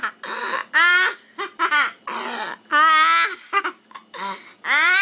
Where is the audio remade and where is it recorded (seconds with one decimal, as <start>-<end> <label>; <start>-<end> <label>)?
0.0-5.0 recorded